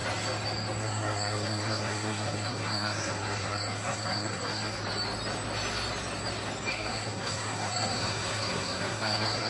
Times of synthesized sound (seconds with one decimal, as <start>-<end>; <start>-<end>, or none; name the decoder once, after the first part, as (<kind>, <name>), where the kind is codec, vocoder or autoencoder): 0.8-4.8 (codec, SNAC); 6.7-9.5

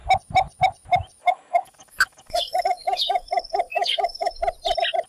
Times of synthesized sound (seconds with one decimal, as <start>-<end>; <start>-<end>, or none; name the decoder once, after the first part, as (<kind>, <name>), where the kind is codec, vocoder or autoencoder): 1.2-4.3 (codec, DAC)

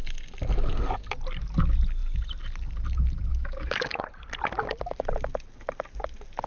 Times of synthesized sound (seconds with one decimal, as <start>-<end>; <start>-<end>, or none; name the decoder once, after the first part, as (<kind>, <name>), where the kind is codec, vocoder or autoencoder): 3.3-4.0 (autoencoder, DAC-VAE)

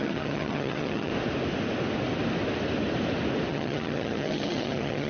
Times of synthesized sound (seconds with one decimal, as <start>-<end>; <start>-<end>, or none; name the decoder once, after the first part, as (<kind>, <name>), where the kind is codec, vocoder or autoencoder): 0.0-1.1 (vocoder, HiFi-GAN); 3.5-5.1

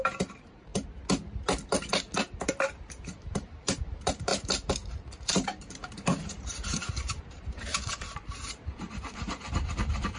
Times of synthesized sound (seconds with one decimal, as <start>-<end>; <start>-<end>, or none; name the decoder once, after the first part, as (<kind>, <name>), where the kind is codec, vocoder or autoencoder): 0.0-0.7 (vocoder, BigVGAN v2); 3.0-4.3; 5.3-10.2

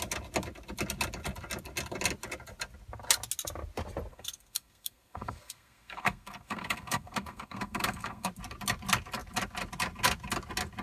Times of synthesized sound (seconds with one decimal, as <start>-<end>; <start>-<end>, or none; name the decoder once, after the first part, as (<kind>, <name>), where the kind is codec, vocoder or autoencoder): 4.1-8.3 (codec, SNAC)